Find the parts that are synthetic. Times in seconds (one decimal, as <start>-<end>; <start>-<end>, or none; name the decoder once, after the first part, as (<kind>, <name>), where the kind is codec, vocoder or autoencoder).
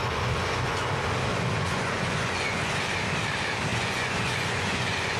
0.0-0.9 (vocoder, Vocos); 1.3-2.8; 3.7-5.2